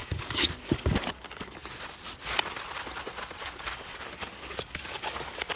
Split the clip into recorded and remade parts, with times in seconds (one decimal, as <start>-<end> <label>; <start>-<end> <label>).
0.0-1.6 remade; 1.6-3.4 recorded; 3.4-5.6 remade

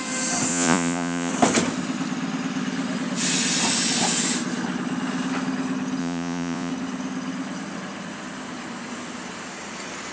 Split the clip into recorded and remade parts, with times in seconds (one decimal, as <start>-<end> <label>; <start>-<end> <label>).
0.0-0.5 recorded; 0.5-1.3 remade; 1.3-6.0 recorded; 6.0-6.7 remade; 6.7-10.1 recorded

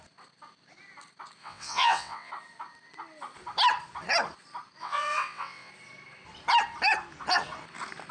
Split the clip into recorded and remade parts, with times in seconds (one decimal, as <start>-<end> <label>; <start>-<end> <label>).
0.0-1.4 recorded; 1.4-2.3 remade; 2.3-4.8 recorded; 4.8-5.7 remade; 5.7-8.1 recorded

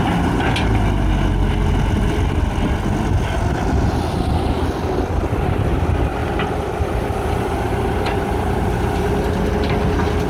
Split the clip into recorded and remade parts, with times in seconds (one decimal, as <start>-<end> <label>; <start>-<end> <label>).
0.0-6.2 recorded; 6.2-9.1 remade; 9.1-10.3 recorded

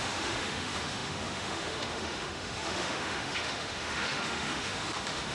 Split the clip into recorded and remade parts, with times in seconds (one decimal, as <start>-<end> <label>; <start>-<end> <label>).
0.0-5.3 remade

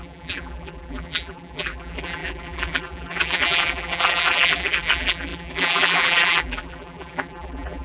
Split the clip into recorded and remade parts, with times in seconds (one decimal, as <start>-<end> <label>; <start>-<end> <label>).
0.0-7.8 remade

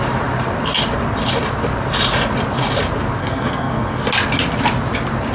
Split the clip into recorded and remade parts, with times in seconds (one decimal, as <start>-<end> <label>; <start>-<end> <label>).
0.0-3.2 recorded; 3.2-4.1 remade; 4.1-5.3 recorded

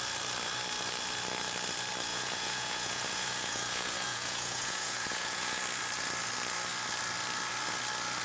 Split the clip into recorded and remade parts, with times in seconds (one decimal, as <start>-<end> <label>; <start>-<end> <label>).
0.0-2.1 recorded; 2.1-5.6 remade; 5.6-8.2 recorded